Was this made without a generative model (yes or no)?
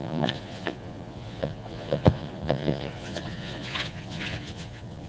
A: no